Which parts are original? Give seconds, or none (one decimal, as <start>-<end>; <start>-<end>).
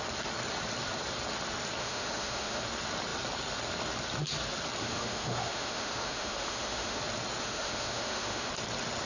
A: 0.0-1.8; 2.6-4.8; 7.0-7.4; 8.5-9.1